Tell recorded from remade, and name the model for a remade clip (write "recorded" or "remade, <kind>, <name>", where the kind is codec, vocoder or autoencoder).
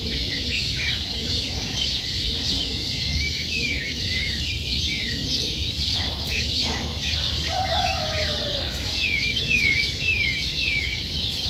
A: remade, codec, DAC